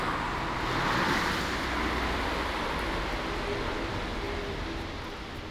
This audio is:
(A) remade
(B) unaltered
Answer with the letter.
B